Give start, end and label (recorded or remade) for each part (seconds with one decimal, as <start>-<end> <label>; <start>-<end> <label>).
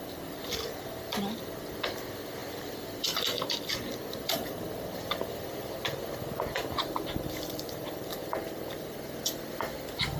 0.0-10.2 remade